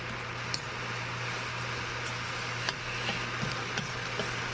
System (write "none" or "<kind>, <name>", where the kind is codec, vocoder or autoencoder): none